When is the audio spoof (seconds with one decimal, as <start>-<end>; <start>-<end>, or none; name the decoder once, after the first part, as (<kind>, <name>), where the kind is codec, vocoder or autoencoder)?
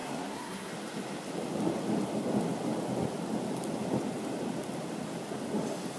0.0-0.7 (codec, SNAC)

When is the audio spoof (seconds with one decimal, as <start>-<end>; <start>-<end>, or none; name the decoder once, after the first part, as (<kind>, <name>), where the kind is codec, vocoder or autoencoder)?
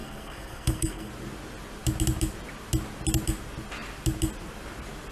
0.0-1.1 (codec, SNAC)